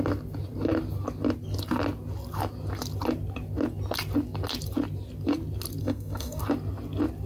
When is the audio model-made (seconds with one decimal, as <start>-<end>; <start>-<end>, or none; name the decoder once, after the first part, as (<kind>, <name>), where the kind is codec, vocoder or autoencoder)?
5.8-6.4 (codec, SNAC)